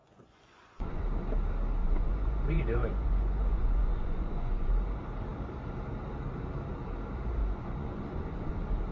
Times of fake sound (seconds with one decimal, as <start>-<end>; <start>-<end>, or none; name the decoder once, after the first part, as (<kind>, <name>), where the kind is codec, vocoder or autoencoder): 0.0-1.0 (vocoder, Vocos); 1.8-4.7; 7.4-8.5